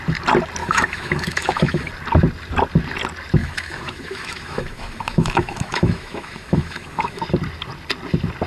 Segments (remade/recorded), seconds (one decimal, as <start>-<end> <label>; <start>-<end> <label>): 0.0-0.6 recorded; 0.6-1.9 remade; 1.9-3.4 recorded; 3.4-7.2 remade; 7.2-8.5 recorded